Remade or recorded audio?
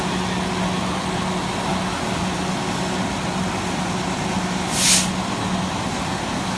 recorded